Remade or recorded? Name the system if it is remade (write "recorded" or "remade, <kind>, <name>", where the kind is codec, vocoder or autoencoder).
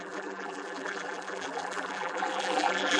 remade, vocoder, BigVGAN v2